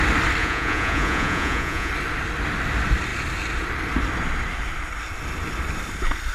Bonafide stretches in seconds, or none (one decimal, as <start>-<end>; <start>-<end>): 0.0-0.4; 1.9-6.3